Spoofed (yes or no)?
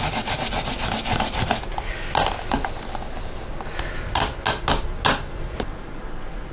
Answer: no